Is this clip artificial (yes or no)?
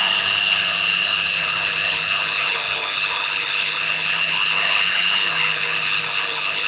yes